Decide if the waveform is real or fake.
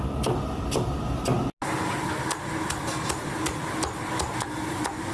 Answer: real